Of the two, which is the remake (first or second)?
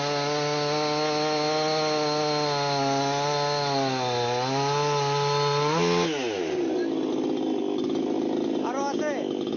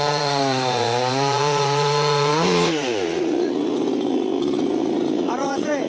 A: second